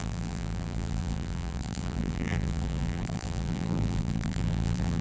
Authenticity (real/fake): fake